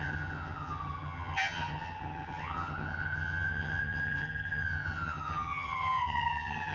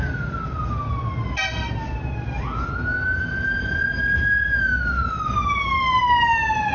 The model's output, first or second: first